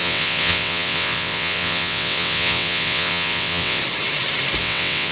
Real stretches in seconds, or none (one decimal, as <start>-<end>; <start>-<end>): 3.8-4.6